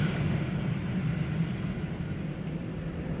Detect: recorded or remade recorded